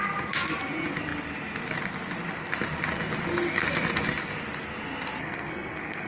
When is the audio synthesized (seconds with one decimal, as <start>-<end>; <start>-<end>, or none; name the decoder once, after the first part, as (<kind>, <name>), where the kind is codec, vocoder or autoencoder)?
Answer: 5.2-6.1 (codec, SNAC)